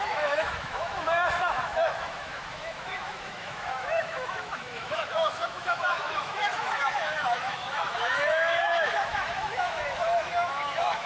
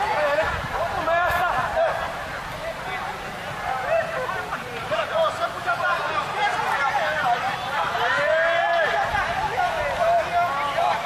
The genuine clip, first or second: second